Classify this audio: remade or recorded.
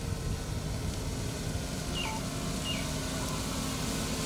recorded